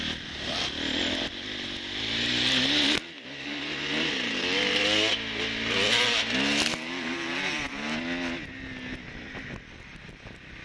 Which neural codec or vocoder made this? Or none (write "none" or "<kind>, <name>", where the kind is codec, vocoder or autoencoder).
none